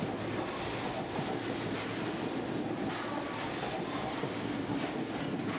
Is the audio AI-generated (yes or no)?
no